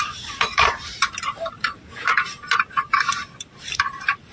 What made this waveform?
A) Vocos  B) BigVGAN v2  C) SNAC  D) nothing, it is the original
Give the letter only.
B